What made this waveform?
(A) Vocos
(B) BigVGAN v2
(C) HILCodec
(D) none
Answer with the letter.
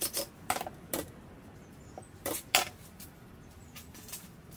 B